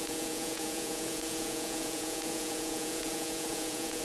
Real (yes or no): no